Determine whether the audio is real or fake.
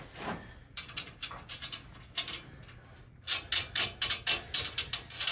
real